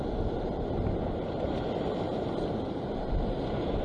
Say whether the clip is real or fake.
real